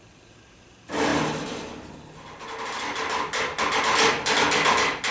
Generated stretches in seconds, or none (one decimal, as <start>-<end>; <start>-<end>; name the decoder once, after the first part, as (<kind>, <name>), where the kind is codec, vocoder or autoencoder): none